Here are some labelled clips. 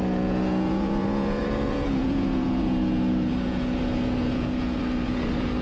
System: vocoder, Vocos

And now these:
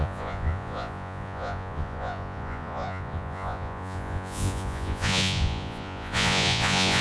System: vocoder, Vocos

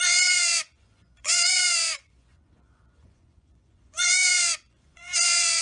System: vocoder, Vocos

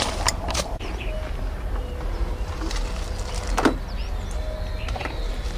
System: none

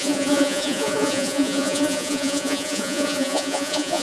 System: vocoder, Vocos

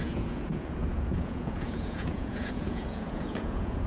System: vocoder, Vocos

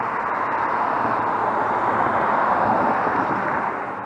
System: none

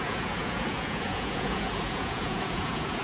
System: vocoder, Vocos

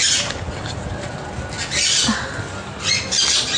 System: none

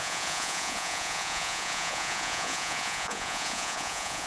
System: vocoder, Vocos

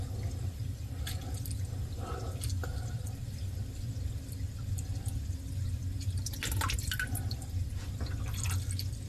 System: none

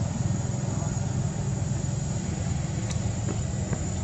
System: none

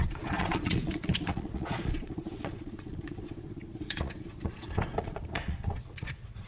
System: vocoder, Vocos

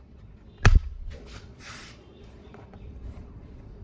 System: vocoder, Vocos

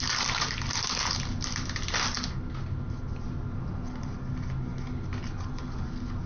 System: none